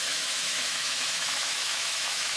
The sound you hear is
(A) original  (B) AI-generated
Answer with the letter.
B